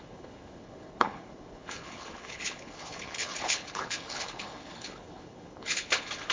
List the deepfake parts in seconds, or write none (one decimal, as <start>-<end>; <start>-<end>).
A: 0.0-6.3